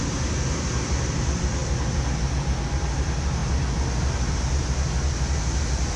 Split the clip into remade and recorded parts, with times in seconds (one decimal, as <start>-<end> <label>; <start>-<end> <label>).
0.0-6.0 recorded